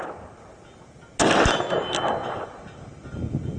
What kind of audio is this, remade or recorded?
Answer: recorded